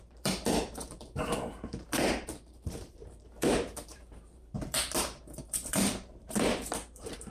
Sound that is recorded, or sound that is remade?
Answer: remade